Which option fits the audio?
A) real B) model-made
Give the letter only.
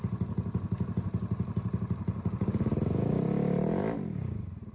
A